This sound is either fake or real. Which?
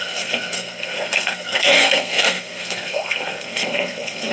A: fake